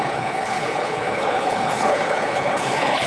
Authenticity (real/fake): fake